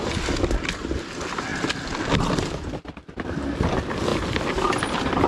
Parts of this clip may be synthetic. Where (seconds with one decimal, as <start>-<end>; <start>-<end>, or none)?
none